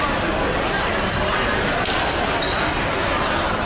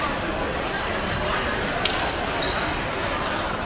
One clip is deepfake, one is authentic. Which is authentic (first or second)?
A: first